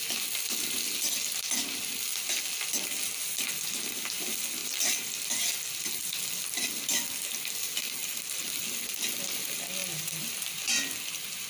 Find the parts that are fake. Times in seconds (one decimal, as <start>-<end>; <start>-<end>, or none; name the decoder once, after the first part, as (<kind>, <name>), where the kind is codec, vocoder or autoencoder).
2.1-3.4 (vocoder, BigVGAN v2); 4.6-5.8; 9.8-11.1